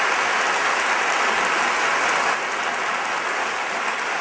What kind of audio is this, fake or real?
real